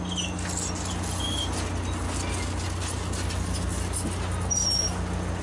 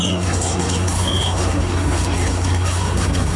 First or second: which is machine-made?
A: second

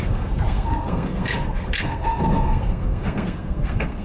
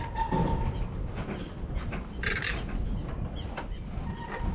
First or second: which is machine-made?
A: first